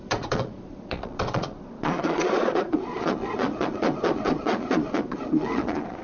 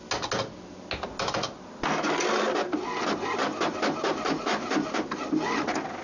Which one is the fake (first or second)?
first